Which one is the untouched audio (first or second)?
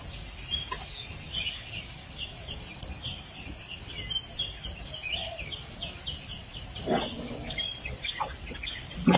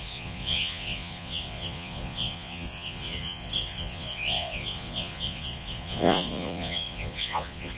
first